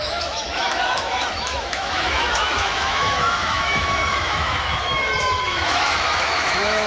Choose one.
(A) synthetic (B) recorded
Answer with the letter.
A